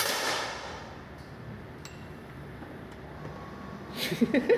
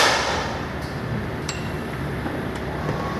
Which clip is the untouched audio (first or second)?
first